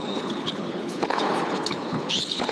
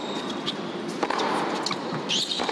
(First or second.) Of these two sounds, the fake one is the first